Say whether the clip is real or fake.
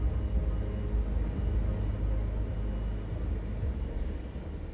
real